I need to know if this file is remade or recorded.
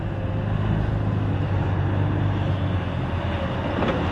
recorded